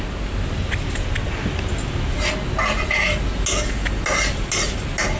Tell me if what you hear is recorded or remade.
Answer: recorded